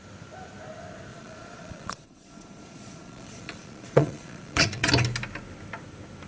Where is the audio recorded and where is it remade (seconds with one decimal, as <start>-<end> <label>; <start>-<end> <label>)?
0.0-1.1 recorded; 1.1-4.9 remade; 4.9-6.3 recorded

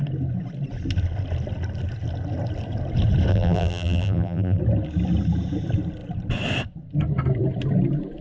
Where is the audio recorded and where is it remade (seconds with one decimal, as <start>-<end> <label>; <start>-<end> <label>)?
0.0-3.3 recorded; 3.3-4.6 remade; 4.6-8.2 recorded

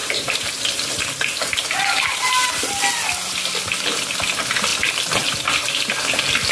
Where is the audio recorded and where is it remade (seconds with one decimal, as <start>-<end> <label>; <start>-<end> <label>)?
0.0-2.3 remade; 2.3-6.5 recorded

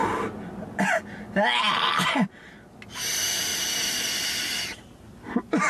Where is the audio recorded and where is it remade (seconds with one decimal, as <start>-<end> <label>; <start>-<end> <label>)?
0.0-5.7 recorded